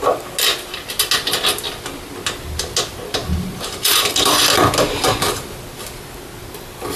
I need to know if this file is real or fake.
real